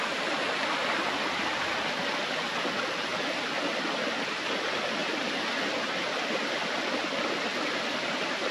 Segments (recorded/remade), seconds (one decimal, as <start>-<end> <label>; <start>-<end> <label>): 0.0-8.5 recorded